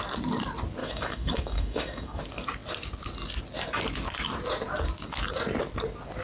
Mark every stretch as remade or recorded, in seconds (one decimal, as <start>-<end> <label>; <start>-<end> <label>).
0.0-0.8 recorded; 0.8-2.2 remade; 2.2-6.2 recorded